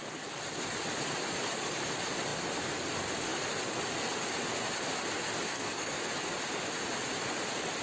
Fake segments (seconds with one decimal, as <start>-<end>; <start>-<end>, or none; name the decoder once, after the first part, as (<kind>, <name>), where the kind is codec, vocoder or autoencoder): 5.5-6.0 (codec, SNAC)